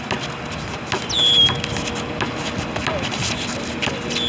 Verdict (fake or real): real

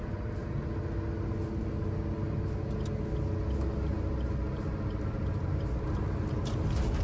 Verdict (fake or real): real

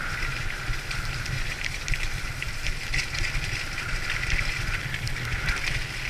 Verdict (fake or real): real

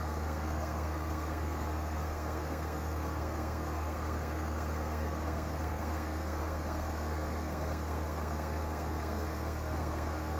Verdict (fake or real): fake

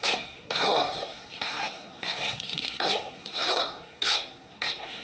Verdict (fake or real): fake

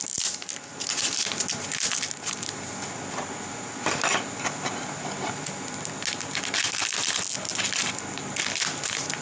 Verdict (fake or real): real